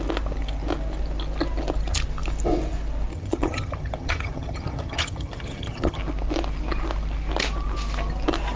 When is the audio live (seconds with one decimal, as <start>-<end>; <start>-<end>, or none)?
0.0-3.1; 6.0-8.6